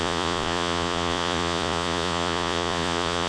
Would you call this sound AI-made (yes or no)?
yes